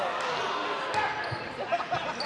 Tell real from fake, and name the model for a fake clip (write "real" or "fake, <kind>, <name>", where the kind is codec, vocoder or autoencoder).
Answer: real